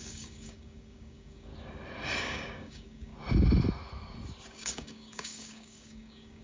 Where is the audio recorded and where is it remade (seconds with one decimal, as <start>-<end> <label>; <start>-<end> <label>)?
0.0-1.5 remade; 1.5-2.2 recorded; 2.2-3.1 remade; 3.1-4.5 recorded; 4.5-6.4 remade